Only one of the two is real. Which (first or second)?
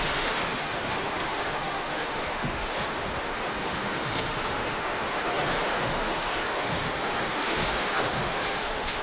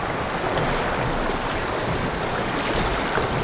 second